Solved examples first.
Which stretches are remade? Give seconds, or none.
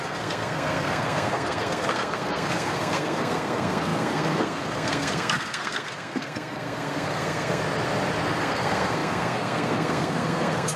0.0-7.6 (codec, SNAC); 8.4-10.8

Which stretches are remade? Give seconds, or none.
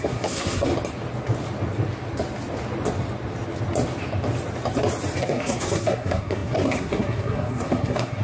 0.0-0.7 (codec, SNAC); 5.2-8.2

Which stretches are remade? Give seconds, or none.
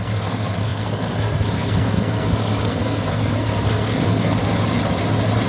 0.0-4.4 (codec, SNAC)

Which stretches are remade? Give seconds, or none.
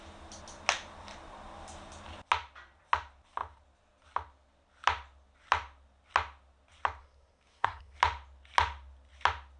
7.0-8.0 (codec, SNAC)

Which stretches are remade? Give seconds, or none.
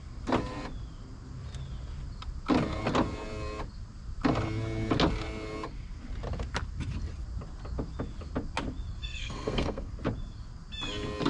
9.0-9.9 (codec, SNAC)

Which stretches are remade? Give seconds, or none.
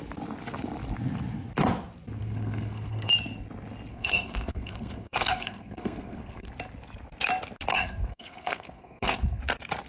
2.2-3.1 (codec, SNAC); 3.9-6.5; 7.7-9.4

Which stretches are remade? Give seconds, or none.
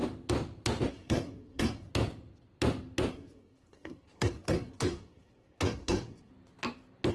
0.9-1.9 (codec, SNAC); 3.1-6.3